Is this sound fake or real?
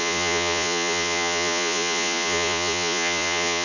fake